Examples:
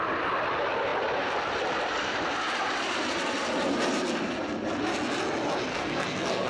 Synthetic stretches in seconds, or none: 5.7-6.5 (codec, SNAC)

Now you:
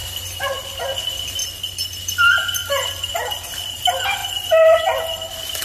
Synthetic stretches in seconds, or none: 0.0-0.8 (vocoder, BigVGAN v2); 1.4-2.6

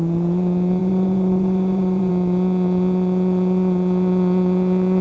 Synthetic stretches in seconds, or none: 0.8-2.1 (vocoder, Vocos)

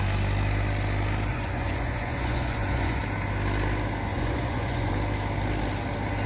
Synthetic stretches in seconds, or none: 1.3-3.0 (vocoder, Vocos); 4.1-4.9